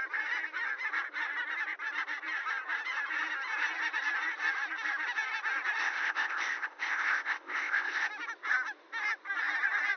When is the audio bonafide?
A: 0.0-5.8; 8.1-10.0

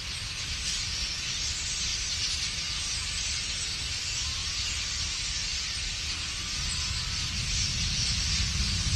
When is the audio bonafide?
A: 0.0-4.4; 6.4-9.0

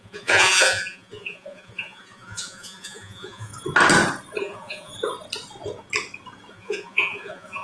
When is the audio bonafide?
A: 3.5-4.4; 4.9-6.5

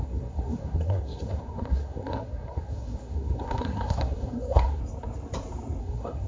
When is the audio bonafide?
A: 4.8-5.8

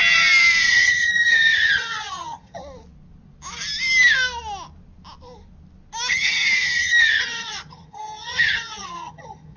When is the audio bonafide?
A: 0.0-0.7; 2.6-6.1

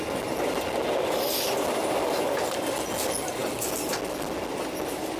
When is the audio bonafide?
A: 0.0-5.2

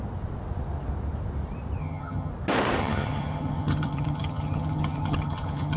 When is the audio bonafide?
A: 0.0-1.8; 2.3-2.8